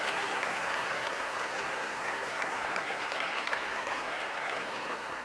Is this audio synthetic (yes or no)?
yes